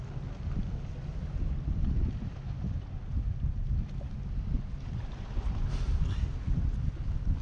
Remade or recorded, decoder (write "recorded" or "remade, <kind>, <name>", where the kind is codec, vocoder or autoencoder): recorded